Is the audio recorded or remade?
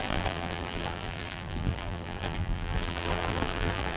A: remade